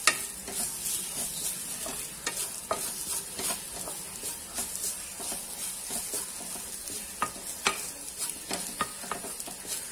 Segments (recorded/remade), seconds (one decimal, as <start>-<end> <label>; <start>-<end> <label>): 0.0-9.9 recorded